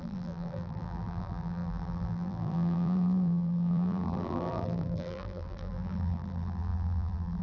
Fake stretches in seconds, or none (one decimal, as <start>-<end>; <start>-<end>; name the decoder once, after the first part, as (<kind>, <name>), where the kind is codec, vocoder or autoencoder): 0.0-7.4 (vocoder, BigVGAN v2)